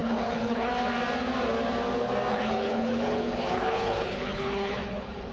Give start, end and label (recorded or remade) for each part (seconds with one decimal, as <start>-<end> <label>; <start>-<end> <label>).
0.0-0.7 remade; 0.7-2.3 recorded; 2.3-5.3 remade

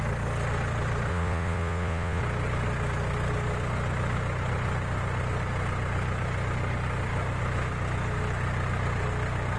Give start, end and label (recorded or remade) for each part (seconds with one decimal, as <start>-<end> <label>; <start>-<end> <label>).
0.0-1.1 recorded; 1.1-2.2 remade; 2.2-9.6 recorded

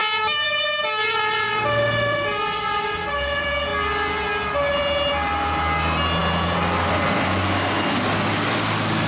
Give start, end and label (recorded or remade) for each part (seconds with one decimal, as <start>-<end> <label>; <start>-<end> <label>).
0.0-0.6 remade; 0.6-1.0 recorded; 1.0-1.6 remade; 1.6-9.1 recorded

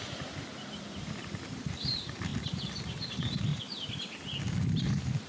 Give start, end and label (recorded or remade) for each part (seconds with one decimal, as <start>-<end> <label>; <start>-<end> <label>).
0.0-2.3 remade; 2.3-2.8 recorded; 2.8-3.5 remade; 3.5-4.5 recorded; 4.5-5.3 remade

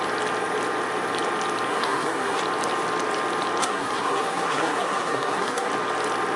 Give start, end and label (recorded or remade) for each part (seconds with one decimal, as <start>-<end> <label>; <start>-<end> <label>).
0.0-1.7 recorded; 1.7-2.4 remade; 2.4-3.6 recorded; 3.6-5.7 remade; 5.7-6.4 recorded

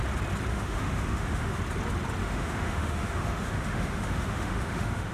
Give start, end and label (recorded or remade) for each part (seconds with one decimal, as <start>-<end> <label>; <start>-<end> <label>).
0.0-0.5 recorded; 0.5-1.6 remade; 1.6-2.2 recorded; 2.2-5.1 remade

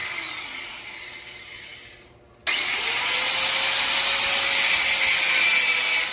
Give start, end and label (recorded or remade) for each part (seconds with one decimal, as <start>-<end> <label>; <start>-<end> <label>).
0.0-6.1 recorded